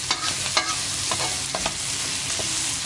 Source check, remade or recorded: recorded